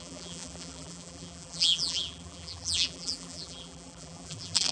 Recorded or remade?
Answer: remade